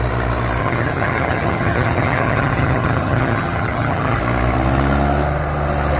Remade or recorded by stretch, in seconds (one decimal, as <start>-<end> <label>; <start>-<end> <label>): 0.0-0.6 recorded; 0.6-4.2 remade; 4.2-6.0 recorded